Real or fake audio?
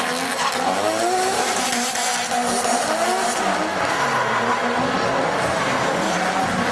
real